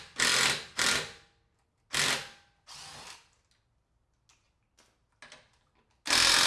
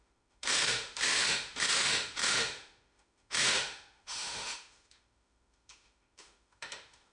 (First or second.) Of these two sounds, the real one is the first